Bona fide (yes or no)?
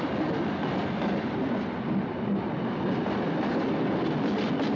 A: yes